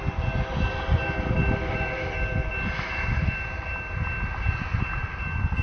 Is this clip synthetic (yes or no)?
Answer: no